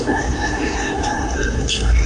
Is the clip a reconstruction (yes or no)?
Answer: yes